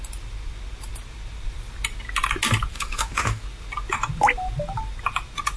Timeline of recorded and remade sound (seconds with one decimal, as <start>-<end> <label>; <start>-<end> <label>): 0.0-2.7 recorded; 2.7-3.4 remade; 3.4-5.6 recorded